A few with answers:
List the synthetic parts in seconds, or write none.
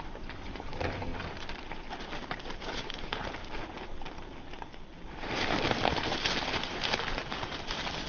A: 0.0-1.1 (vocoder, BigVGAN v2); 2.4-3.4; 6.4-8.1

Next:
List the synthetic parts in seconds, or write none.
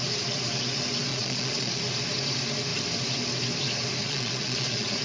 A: 1.1-1.8 (vocoder, Vocos); 4.0-5.0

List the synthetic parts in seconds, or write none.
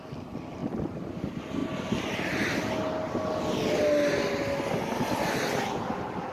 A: none